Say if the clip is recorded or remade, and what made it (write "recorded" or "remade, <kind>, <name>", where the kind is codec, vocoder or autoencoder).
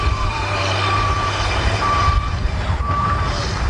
remade, vocoder, BigVGAN v2